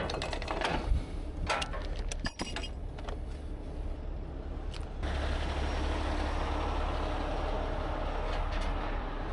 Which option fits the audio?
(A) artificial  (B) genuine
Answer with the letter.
B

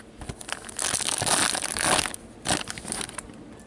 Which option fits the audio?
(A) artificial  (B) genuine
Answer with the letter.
B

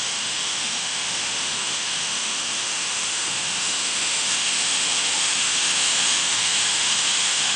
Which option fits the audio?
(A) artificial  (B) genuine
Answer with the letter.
A